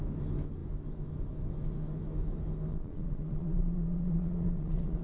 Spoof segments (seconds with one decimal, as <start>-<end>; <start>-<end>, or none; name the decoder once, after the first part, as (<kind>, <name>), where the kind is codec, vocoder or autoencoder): 2.7-5.0 (vocoder, Vocos)